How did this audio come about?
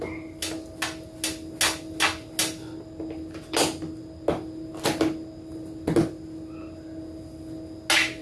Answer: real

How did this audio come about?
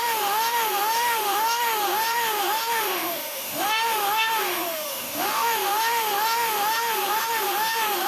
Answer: fake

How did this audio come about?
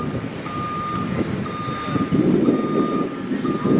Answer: real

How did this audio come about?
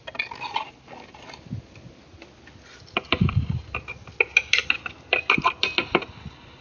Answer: real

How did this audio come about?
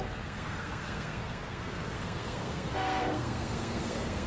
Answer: fake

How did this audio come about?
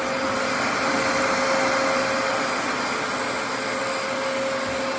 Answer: real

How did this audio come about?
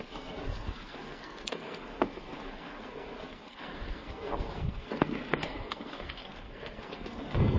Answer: fake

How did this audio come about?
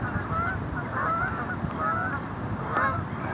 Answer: real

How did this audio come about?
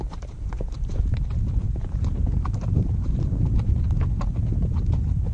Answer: fake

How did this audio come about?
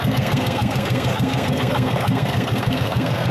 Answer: fake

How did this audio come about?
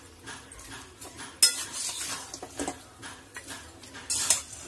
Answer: real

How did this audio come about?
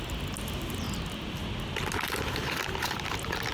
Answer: real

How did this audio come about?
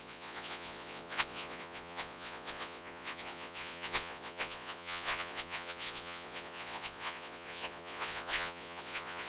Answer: fake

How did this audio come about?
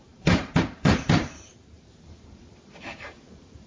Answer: fake